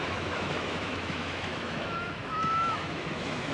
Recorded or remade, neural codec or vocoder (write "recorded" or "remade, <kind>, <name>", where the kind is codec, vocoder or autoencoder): remade, autoencoder, DAC-VAE